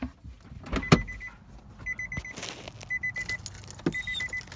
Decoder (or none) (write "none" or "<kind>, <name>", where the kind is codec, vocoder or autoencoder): none